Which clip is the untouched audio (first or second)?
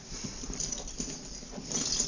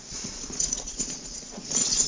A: first